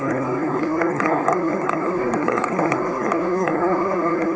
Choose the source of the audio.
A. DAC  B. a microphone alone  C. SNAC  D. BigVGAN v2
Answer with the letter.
C